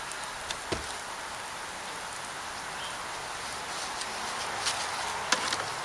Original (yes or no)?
yes